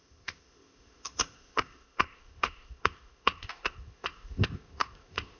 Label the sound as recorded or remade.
remade